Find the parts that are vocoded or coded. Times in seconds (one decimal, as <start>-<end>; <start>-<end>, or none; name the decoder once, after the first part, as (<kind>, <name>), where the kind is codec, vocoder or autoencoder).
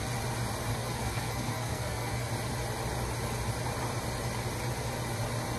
0.7-2.3 (codec, SNAC)